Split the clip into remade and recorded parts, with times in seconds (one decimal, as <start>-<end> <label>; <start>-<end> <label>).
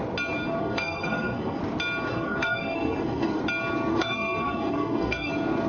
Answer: 0.0-0.6 recorded; 0.6-1.6 remade; 1.6-2.1 recorded; 2.1-3.4 remade; 3.4-3.9 recorded; 3.9-5.3 remade; 5.3-5.7 recorded